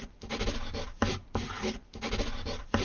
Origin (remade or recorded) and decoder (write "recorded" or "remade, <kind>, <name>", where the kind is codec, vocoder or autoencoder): recorded